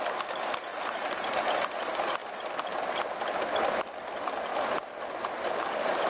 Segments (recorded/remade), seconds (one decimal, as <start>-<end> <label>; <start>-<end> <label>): 0.0-0.7 recorded; 0.7-1.3 remade; 1.3-6.1 recorded